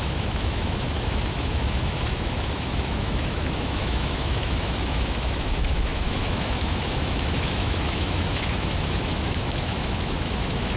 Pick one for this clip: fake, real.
fake